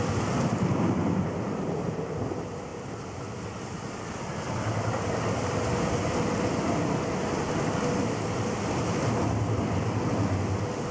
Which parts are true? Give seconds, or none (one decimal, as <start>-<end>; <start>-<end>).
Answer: 0.0-10.9

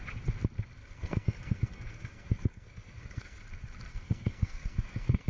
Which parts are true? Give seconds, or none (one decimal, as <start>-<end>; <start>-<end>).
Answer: 0.0-0.8; 3.4-3.9

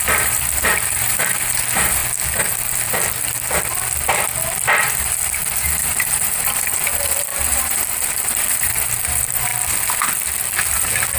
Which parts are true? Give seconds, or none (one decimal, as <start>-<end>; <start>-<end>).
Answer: 2.0-4.8; 9.5-11.2